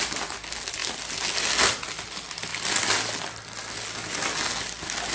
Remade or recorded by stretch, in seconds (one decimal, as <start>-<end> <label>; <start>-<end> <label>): 0.0-5.1 recorded